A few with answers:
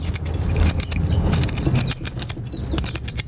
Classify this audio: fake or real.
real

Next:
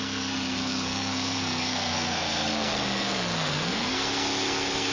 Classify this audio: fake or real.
fake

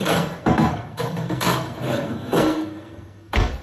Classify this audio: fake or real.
fake